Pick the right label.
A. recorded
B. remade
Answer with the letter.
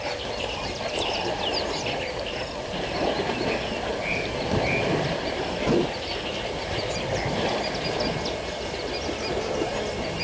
A